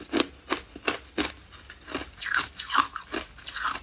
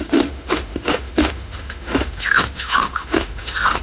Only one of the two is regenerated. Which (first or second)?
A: second